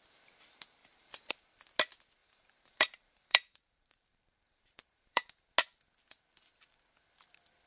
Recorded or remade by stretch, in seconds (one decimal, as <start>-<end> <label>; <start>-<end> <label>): 0.0-0.8 recorded; 0.8-1.3 remade; 1.3-2.2 recorded; 2.2-5.5 remade; 5.5-7.7 recorded